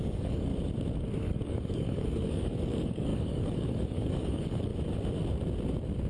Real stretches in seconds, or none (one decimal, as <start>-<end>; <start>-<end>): 0.5-1.2; 4.7-6.1